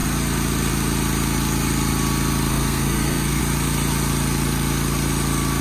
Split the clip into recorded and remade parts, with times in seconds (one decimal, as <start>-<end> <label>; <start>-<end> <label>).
0.0-2.5 recorded; 2.5-3.4 remade; 3.4-5.6 recorded